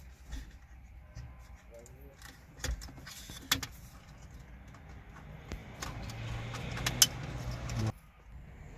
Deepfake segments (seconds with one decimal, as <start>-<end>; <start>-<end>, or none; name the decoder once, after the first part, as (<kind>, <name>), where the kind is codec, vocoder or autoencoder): none